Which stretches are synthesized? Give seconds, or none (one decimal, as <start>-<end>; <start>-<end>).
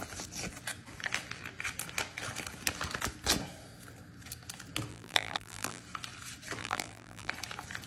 4.9-5.8; 6.6-7.3